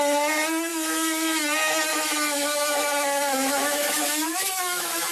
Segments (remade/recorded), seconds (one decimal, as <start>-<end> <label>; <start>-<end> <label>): 0.0-0.7 recorded; 0.7-1.4 remade; 1.4-1.9 recorded; 1.9-5.1 remade